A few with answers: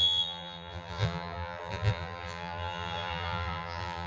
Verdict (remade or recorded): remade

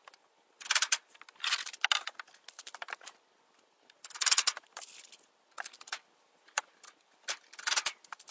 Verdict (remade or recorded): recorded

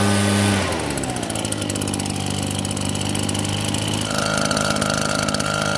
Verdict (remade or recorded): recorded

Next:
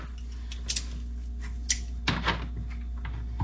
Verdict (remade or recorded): recorded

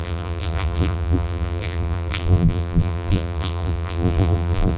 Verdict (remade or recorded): remade